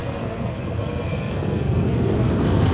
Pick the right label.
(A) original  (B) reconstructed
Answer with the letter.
B